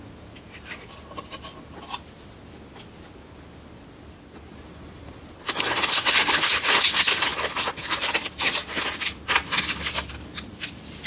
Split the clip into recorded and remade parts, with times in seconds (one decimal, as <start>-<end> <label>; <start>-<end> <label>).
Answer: 0.0-11.1 recorded